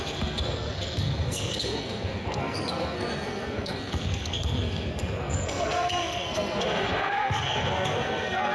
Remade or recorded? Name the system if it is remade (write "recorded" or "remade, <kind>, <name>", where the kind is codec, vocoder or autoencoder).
remade, codec, SNAC